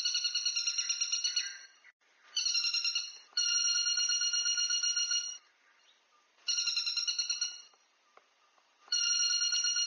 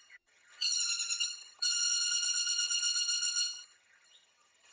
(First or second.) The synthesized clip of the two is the second